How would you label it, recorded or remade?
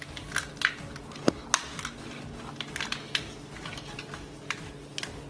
recorded